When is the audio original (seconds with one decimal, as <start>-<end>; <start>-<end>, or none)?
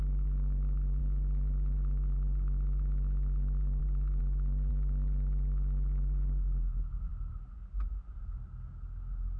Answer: 0.0-9.4